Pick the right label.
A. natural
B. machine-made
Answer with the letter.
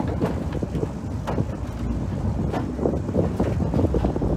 A